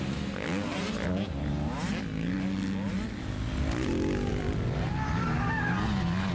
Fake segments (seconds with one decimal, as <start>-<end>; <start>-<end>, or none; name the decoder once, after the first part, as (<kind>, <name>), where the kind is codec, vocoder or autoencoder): none

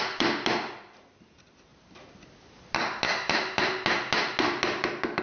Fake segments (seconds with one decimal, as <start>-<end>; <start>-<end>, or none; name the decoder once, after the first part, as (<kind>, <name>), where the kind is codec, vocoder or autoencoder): none